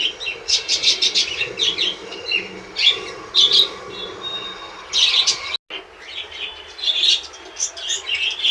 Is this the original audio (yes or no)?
yes